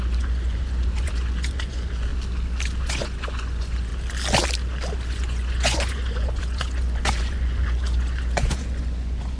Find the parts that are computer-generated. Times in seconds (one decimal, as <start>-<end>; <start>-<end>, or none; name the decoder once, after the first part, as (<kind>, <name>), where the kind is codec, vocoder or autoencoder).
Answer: 0.0-2.1 (vocoder, Vocos); 2.8-3.9; 5.1-9.4